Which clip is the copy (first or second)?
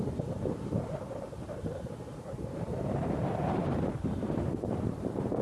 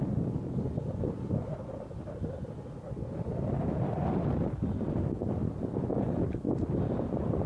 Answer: first